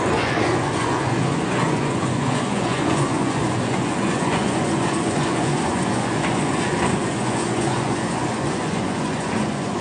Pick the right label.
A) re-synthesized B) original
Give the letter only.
A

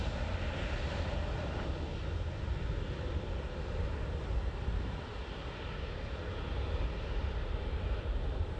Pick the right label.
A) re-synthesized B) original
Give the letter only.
B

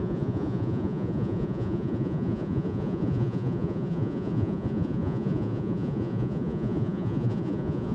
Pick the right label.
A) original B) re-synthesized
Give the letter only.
B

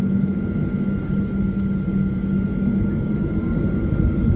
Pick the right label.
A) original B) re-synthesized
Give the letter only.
A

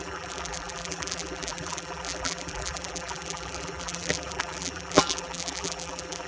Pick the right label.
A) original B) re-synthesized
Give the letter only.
B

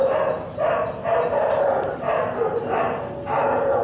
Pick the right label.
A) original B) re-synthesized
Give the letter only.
A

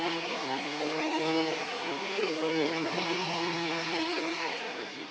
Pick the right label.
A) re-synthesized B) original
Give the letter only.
A